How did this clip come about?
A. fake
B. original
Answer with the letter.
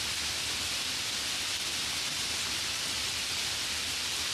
B